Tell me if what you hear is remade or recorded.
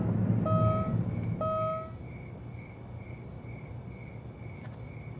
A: recorded